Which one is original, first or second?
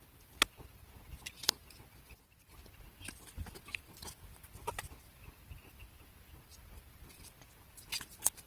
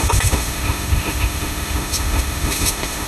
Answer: first